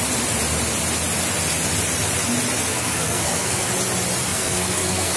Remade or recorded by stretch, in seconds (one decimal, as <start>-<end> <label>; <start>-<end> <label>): 0.0-2.7 recorded; 2.7-3.7 remade; 3.7-4.2 recorded; 4.2-5.2 remade